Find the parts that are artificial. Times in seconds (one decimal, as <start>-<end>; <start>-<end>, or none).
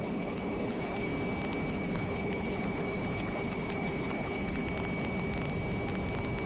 0.0-1.1; 1.7-4.6